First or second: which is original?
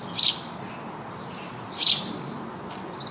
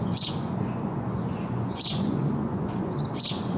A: first